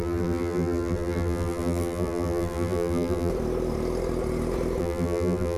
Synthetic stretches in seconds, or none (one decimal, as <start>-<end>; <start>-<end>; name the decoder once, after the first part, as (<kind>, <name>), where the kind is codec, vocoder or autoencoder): 0.0-3.3 (vocoder, BigVGAN v2); 4.8-5.6